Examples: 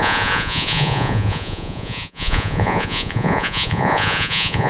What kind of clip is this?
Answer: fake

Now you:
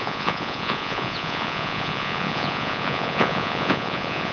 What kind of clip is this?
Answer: fake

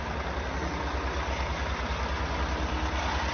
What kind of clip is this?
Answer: fake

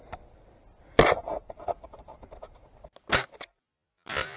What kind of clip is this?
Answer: real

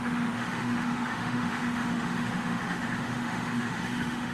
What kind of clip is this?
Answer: fake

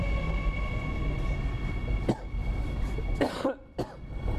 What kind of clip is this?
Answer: real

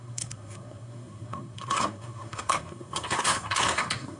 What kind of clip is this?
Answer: fake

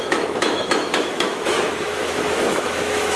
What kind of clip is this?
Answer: fake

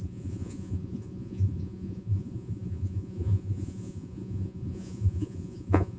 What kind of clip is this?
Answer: fake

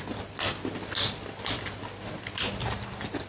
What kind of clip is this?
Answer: real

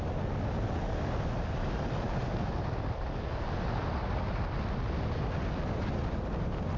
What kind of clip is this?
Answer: real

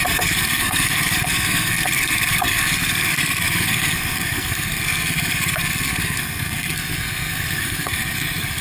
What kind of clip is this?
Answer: fake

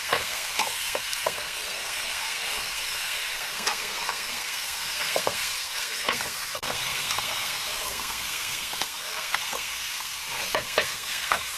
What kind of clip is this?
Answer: fake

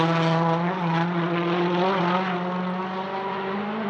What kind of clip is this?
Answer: real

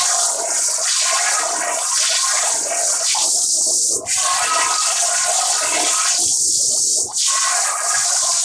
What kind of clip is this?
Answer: fake